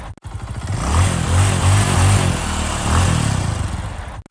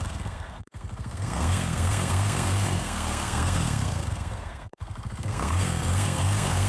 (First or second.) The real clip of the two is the first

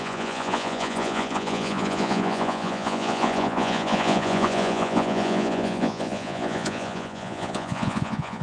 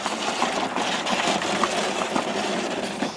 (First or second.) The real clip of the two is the second